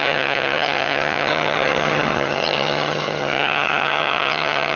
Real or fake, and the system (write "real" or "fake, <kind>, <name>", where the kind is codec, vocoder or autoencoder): fake, vocoder, HiFi-GAN